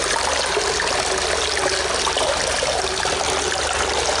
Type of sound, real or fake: real